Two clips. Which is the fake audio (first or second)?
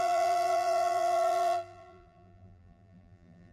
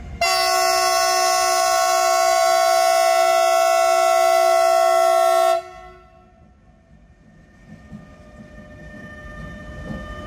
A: first